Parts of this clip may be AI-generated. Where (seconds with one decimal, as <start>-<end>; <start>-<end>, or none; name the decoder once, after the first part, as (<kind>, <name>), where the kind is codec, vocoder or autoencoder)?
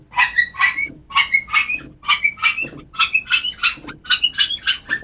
none